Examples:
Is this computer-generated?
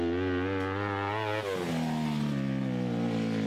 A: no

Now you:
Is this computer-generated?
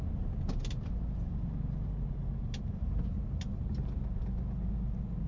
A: no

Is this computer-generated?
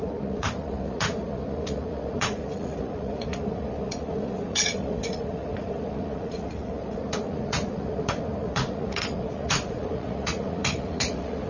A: yes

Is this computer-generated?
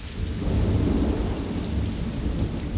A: no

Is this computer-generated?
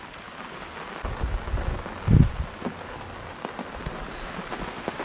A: no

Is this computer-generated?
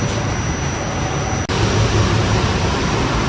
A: no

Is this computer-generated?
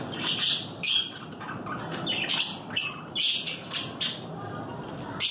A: no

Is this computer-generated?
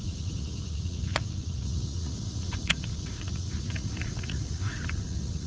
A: yes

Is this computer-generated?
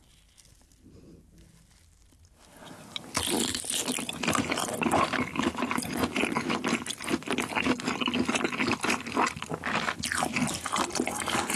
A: no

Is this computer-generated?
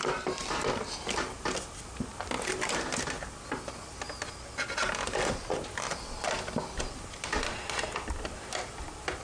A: no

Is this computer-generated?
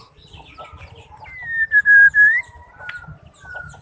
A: no